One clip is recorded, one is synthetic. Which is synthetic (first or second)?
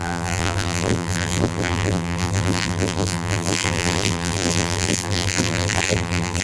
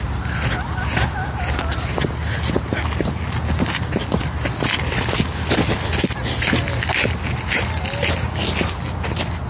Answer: first